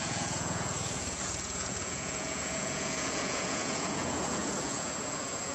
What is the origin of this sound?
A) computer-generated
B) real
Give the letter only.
A